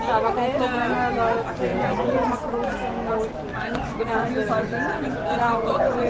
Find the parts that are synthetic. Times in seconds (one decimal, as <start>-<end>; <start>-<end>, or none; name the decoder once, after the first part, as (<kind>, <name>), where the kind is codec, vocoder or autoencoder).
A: 1.7-2.3 (vocoder, Vocos); 3.5-4.3; 4.9-6.1